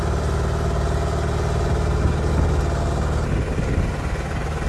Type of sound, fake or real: real